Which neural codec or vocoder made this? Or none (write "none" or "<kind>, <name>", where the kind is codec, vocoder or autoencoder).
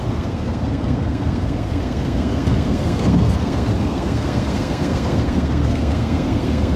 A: codec, SNAC